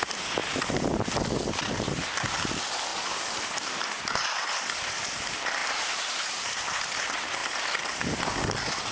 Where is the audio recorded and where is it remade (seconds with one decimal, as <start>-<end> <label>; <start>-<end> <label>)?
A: 0.0-5.6 recorded; 5.6-6.8 remade; 6.8-8.9 recorded